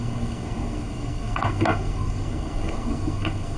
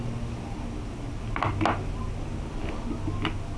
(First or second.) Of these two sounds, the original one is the second